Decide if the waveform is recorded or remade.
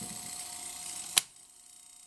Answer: recorded